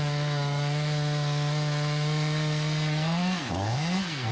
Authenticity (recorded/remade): remade